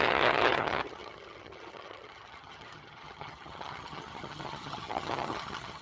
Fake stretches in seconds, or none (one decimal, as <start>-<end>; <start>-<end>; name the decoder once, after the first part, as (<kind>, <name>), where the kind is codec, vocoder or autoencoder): 0.0-5.8 (vocoder, HiFi-GAN)